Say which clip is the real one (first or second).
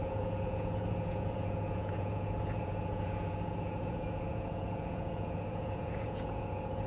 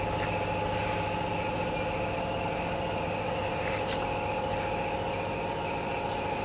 second